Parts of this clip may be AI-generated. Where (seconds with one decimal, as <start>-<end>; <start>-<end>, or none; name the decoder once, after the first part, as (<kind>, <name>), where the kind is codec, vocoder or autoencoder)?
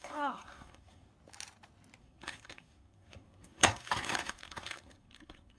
0.0-1.1 (codec, SNAC); 2.0-5.6